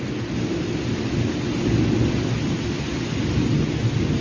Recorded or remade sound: recorded